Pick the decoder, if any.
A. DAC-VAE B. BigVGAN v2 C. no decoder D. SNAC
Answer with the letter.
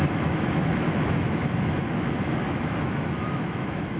A